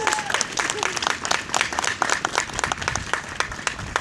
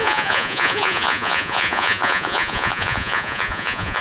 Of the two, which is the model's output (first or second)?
second